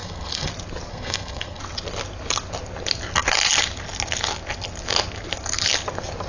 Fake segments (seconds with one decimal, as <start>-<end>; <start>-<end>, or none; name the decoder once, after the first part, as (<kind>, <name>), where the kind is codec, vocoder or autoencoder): 0.0-0.5 (codec, SNAC); 0.9-1.6